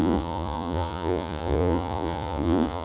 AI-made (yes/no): yes